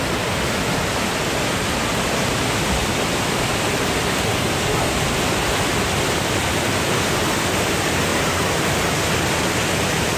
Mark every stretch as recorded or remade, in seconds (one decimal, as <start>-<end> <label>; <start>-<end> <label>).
0.0-8.1 recorded; 8.1-9.0 remade; 9.0-10.2 recorded